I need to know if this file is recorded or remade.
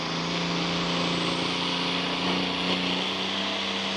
recorded